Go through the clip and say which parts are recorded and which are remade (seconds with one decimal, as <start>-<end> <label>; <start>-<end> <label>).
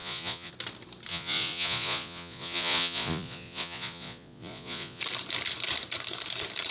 0.0-0.5 remade; 0.5-1.1 recorded; 1.1-5.0 remade; 5.0-6.7 recorded